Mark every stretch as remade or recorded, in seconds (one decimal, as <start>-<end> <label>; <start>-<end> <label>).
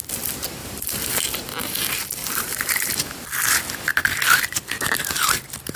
0.0-0.6 recorded; 0.6-1.2 remade; 1.2-2.2 recorded; 2.2-2.9 remade; 2.9-5.8 recorded